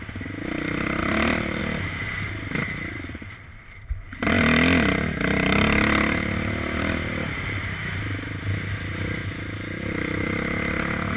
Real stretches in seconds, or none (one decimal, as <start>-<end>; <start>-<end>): 0.0-1.0; 1.6-2.6; 4.1-11.2